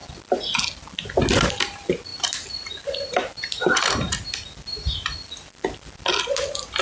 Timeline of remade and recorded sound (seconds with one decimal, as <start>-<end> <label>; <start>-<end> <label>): 0.0-6.8 recorded